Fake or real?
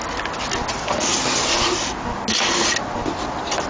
real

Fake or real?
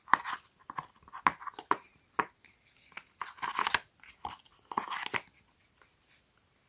real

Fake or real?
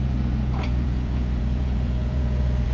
fake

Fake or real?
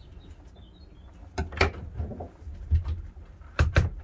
real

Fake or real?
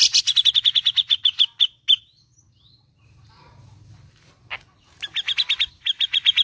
real